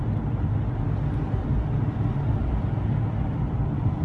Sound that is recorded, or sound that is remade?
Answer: recorded